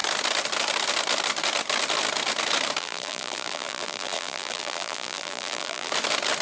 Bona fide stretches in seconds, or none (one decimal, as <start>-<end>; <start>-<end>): 0.0-2.8; 5.9-6.4